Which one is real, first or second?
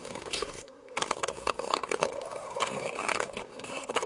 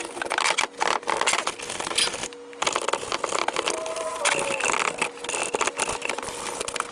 second